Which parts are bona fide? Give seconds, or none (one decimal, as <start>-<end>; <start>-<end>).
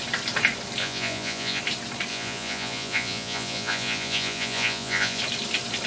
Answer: 0.0-0.8; 1.6-2.1; 5.2-5.9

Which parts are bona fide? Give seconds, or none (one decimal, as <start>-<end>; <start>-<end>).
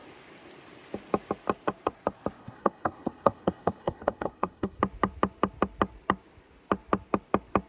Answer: 0.0-2.4; 4.8-7.7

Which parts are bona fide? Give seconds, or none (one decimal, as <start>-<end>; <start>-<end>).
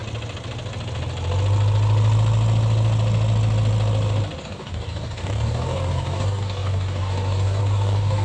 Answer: 0.0-4.4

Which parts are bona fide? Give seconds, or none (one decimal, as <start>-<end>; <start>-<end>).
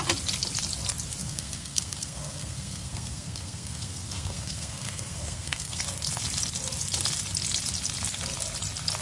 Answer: 0.0-1.2; 5.8-9.0